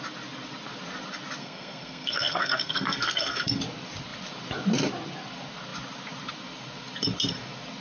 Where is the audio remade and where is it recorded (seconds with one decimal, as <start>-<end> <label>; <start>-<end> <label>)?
0.0-1.4 recorded; 1.4-3.6 remade; 3.6-7.8 recorded